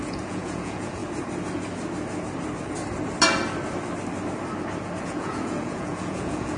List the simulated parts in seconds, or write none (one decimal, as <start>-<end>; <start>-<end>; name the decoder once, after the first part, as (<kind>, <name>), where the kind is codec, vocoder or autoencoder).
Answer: 0.0-1.0 (vocoder, Vocos); 5.0-6.6